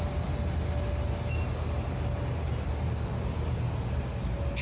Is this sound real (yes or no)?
yes